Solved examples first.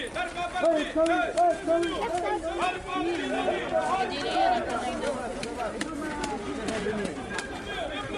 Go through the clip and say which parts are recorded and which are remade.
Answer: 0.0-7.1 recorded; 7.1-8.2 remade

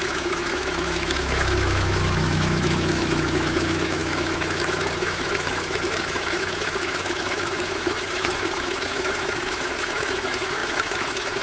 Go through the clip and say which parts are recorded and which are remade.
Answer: 0.0-11.4 remade

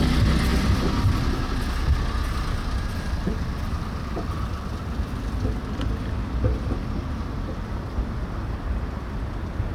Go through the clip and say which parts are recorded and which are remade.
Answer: 0.0-9.7 recorded

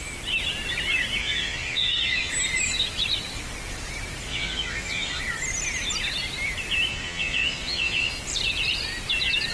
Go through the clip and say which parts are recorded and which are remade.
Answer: 0.0-1.2 recorded; 1.2-2.3 remade; 2.3-4.3 recorded; 4.3-5.2 remade; 5.2-6.9 recorded; 6.9-8.1 remade; 8.1-9.5 recorded